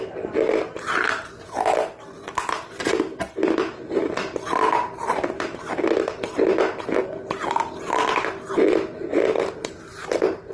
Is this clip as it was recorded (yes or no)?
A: yes